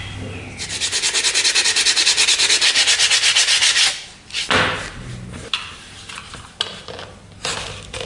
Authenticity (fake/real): real